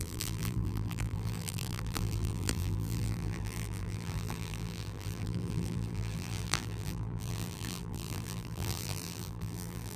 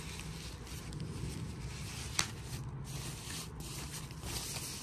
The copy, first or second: first